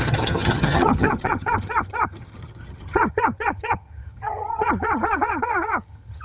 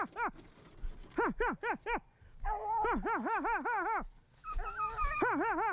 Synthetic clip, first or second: first